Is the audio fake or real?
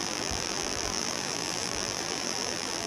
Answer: fake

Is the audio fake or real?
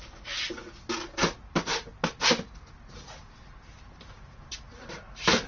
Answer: real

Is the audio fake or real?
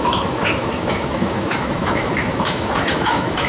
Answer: fake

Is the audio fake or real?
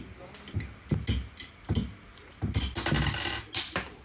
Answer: real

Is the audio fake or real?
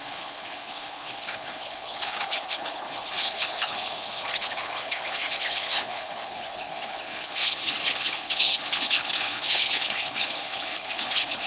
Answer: fake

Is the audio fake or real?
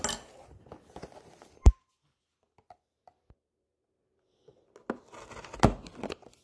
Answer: real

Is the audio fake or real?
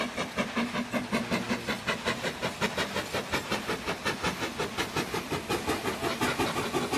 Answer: real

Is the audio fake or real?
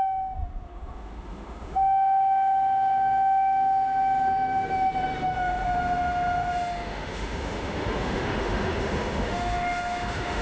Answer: fake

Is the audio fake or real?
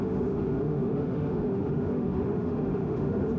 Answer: fake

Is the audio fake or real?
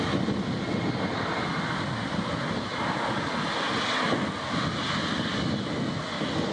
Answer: real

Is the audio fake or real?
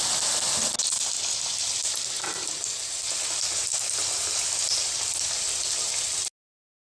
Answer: real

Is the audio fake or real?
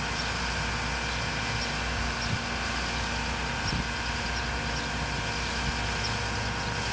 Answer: real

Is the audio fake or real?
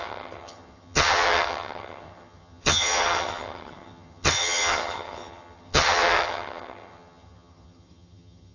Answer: fake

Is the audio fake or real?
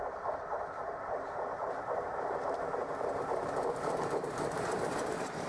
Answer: fake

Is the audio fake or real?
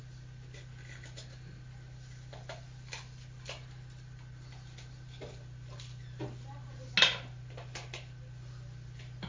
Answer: real